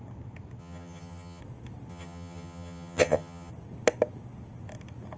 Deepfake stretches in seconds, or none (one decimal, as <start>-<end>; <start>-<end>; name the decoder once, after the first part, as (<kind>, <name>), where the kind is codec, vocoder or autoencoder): 0.6-1.4 (vocoder, HiFi-GAN); 1.9-3.5